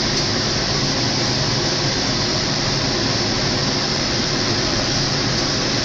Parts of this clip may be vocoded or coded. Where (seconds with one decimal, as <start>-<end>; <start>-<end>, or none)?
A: 2.3-2.9; 3.6-4.9